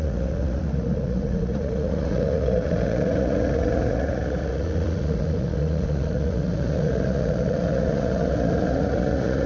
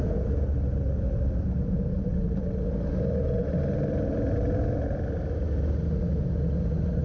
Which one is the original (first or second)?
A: second